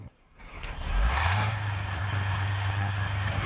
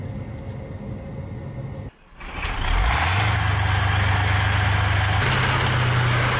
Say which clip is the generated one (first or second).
first